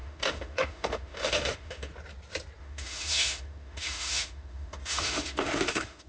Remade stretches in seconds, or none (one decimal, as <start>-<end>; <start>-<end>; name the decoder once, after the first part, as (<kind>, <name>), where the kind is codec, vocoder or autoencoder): 0.0-1.9 (autoencoder, DAC-VAE); 2.6-6.1